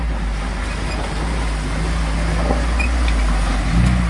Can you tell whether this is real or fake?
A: real